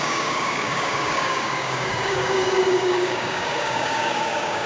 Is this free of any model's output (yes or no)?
no